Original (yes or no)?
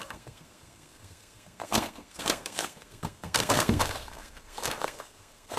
no